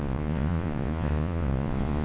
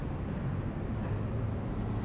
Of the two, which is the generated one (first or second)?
first